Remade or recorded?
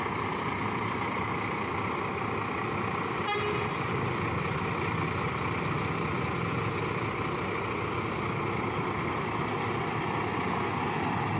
recorded